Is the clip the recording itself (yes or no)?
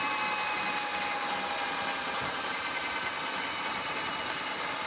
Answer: yes